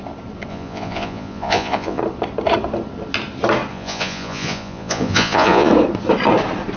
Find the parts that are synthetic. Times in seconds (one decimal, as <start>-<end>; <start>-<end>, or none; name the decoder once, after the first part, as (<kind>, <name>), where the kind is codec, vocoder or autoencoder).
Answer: 0.5-2.0 (vocoder, Vocos); 3.7-5.7